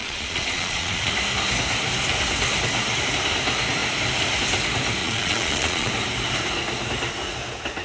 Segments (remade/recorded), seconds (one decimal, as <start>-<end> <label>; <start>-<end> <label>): 0.0-1.1 remade; 1.1-5.0 recorded; 5.0-5.9 remade; 5.9-7.8 recorded